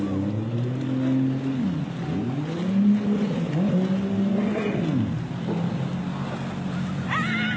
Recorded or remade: recorded